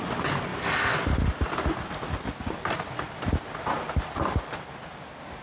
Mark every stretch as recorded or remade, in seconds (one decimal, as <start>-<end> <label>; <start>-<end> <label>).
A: 0.0-5.4 recorded